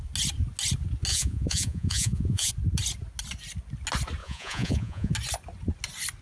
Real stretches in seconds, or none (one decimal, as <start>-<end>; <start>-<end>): 0.0-1.1; 2.5-4.2; 5.1-6.2